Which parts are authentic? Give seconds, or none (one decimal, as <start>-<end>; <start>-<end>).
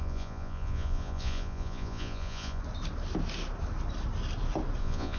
2.6-4.8